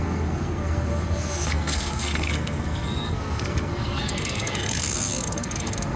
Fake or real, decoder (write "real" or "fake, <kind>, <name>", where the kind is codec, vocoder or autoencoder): fake, codec, SNAC